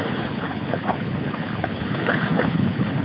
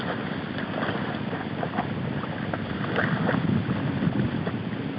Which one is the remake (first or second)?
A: first